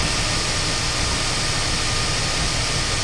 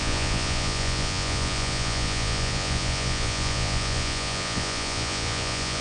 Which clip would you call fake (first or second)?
second